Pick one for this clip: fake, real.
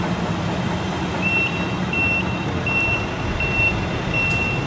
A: real